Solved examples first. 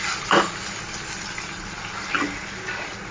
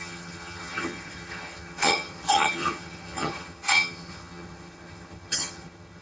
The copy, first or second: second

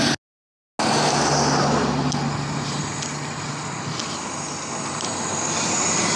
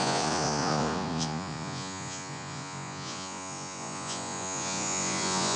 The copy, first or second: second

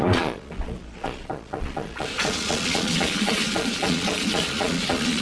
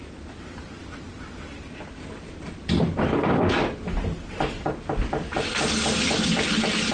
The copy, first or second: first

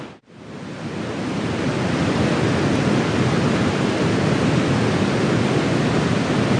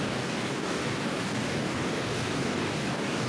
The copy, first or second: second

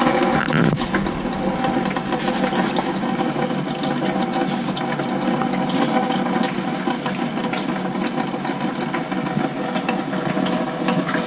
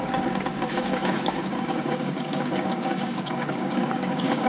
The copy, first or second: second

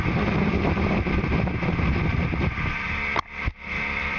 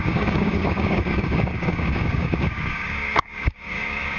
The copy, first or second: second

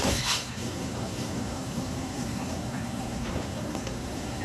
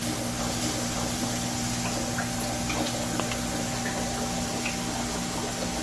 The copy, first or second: first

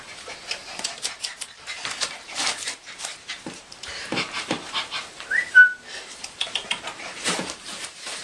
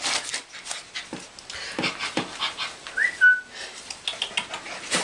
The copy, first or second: first